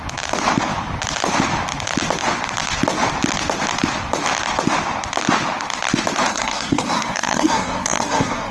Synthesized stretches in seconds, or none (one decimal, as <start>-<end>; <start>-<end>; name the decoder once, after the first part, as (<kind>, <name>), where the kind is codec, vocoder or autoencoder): 6.3-8.5 (codec, SNAC)